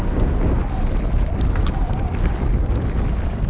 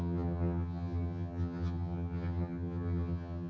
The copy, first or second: second